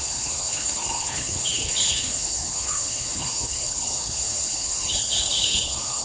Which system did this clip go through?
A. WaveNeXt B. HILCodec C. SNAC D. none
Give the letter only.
B